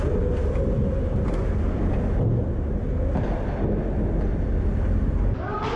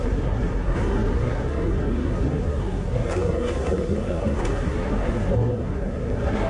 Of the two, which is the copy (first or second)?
second